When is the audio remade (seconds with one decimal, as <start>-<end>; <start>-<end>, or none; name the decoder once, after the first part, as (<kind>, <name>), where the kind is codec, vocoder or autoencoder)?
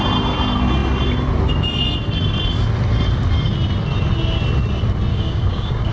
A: 5.1-5.9 (codec, DAC)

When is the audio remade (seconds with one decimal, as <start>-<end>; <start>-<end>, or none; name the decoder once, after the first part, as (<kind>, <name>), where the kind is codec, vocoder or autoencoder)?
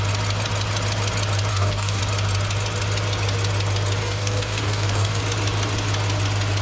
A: 1.5-2.0 (codec, DAC); 4.0-5.2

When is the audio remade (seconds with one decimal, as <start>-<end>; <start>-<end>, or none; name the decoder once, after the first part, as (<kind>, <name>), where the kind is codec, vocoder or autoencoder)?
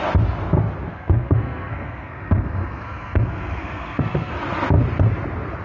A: 0.9-4.3 (codec, SNAC)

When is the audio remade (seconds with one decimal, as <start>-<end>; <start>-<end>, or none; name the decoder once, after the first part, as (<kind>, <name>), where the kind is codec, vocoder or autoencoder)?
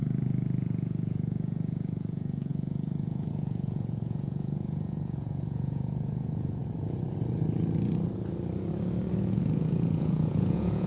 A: 0.0-6.6 (vocoder, Vocos); 9.1-10.9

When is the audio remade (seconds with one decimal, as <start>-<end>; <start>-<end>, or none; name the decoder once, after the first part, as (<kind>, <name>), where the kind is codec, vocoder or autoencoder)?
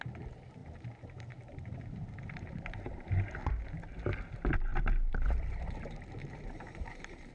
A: 0.6-3.5 (vocoder, BigVGAN v2); 4.7-7.3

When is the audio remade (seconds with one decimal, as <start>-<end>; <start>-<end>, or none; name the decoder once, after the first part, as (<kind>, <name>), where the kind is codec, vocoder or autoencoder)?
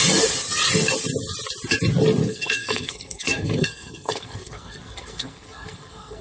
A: 2.2-6.2 (codec, SNAC)